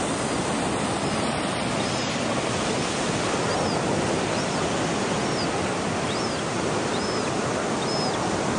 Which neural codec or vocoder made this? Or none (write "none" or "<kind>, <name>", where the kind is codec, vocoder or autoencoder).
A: none